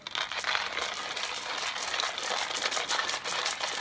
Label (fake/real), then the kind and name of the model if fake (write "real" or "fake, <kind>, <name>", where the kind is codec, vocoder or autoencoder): real